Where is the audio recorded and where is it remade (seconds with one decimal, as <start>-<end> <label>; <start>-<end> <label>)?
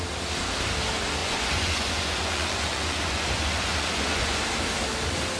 0.0-1.2 recorded; 1.2-4.4 remade; 4.4-5.4 recorded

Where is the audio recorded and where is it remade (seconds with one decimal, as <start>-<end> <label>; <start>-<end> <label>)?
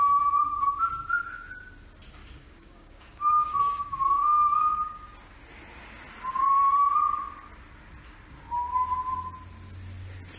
0.0-2.2 recorded; 2.2-5.0 remade; 5.0-10.4 recorded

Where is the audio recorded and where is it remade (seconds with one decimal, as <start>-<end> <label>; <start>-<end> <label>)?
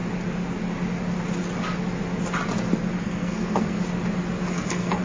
0.0-3.0 recorded; 3.0-3.8 remade; 3.8-4.5 recorded; 4.5-5.0 remade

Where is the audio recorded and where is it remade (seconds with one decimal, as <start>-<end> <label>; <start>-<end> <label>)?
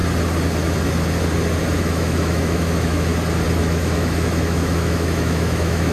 0.0-1.8 recorded; 1.8-3.1 remade; 3.1-3.6 recorded; 3.6-5.9 remade